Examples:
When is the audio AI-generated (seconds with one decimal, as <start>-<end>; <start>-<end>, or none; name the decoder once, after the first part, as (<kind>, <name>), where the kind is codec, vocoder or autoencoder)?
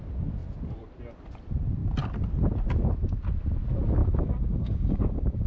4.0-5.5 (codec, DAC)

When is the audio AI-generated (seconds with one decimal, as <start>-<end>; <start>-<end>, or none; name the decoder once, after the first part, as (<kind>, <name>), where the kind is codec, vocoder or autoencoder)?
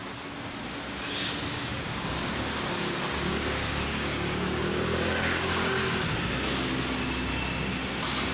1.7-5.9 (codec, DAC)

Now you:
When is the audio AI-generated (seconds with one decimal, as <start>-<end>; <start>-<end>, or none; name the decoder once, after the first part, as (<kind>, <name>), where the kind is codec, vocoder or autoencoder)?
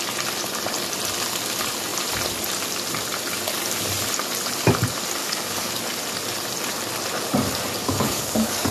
5.2-5.7 (codec, DAC); 7.8-8.7